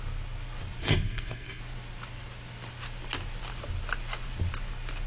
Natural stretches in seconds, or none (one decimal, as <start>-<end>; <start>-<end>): 0.0-0.8; 1.6-5.1